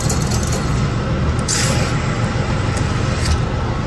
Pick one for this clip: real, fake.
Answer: real